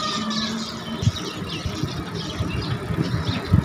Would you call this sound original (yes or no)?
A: yes